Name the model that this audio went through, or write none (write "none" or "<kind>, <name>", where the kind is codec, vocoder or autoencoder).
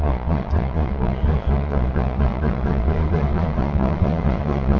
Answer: vocoder, Vocos